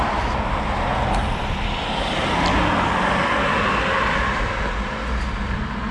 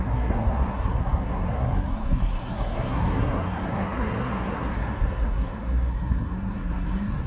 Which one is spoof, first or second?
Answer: second